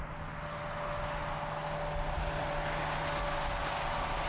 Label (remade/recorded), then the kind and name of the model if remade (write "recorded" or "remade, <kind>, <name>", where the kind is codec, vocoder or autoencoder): recorded